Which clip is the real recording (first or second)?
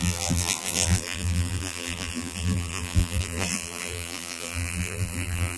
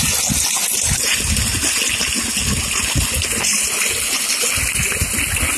second